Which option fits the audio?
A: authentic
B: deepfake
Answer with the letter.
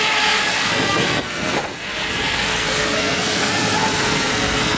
B